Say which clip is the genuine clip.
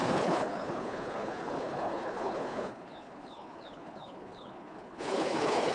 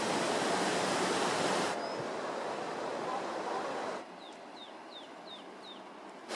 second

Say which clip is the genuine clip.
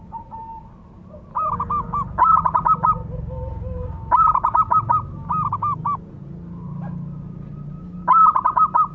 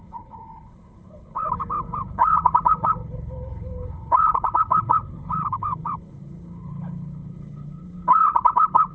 first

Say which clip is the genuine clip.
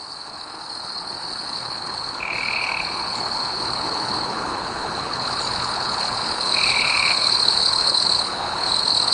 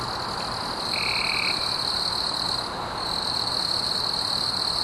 second